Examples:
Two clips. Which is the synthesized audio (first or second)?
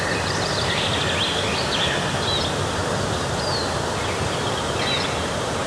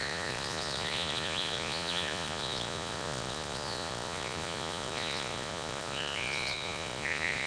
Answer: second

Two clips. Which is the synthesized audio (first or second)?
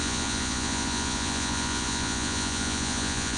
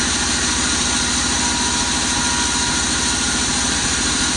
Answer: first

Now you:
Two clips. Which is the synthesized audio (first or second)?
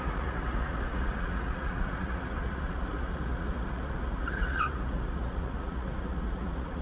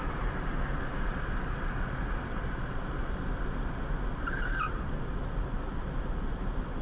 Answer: first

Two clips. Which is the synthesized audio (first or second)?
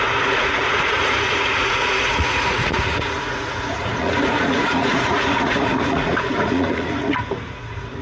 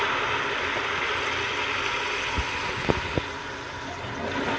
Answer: first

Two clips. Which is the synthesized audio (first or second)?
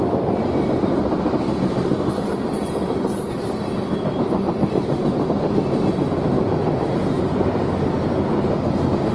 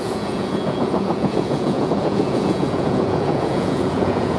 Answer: second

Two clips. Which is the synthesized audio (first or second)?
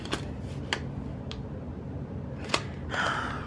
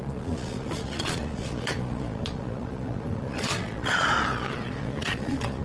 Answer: second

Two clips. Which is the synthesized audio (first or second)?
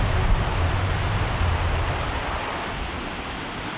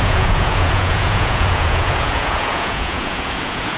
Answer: second